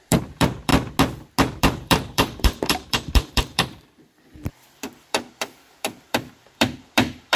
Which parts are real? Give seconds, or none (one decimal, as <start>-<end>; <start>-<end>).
0.7-1.6